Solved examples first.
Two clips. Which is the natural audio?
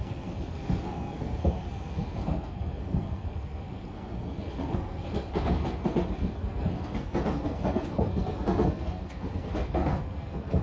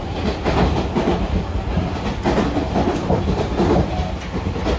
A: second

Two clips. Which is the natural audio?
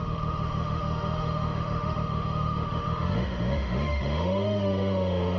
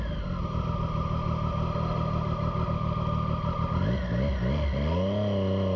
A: second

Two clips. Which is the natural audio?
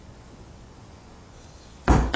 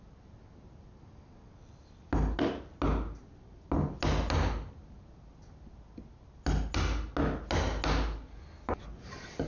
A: second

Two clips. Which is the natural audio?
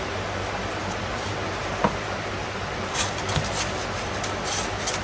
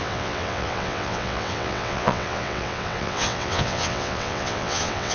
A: first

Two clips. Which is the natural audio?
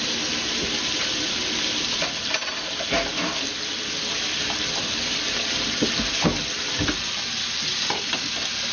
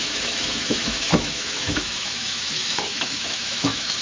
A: first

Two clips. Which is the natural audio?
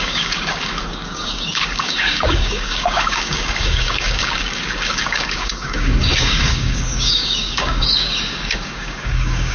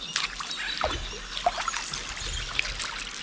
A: second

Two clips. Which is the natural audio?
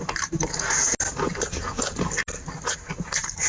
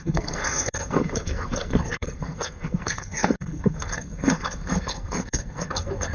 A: first